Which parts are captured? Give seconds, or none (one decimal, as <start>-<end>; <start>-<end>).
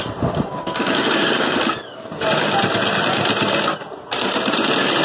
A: 0.0-0.6; 1.6-5.0